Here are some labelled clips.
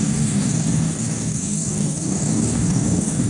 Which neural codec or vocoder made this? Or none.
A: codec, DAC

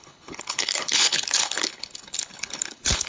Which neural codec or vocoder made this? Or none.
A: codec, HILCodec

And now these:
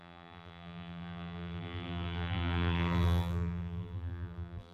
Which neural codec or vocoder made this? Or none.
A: vocoder, BigVGAN v2